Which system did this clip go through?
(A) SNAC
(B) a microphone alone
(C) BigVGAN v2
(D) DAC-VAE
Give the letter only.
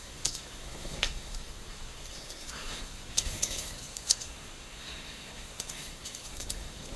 A